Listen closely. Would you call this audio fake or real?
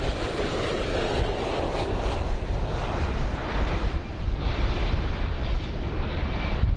real